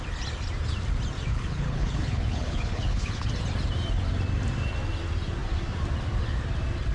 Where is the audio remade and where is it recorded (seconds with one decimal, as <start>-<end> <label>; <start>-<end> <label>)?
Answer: 0.0-1.3 recorded; 1.3-3.3 remade; 3.3-6.9 recorded